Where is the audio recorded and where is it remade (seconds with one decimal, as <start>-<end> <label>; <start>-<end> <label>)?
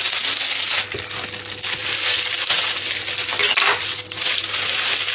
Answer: 0.0-1.8 recorded; 1.8-2.5 remade; 2.5-5.1 recorded